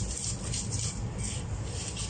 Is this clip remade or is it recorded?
remade